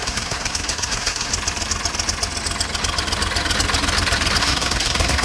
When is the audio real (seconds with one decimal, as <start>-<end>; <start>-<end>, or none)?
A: 1.3-4.4